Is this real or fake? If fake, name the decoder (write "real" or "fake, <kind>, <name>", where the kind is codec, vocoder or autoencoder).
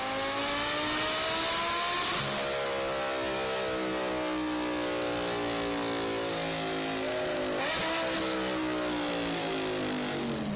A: real